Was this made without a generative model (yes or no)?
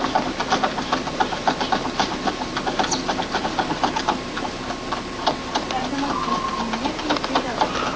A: yes